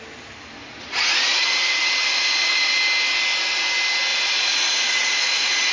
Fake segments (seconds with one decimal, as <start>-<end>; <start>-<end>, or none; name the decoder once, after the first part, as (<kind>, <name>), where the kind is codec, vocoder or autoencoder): 0.6-2.8 (vocoder, Vocos); 4.1-5.7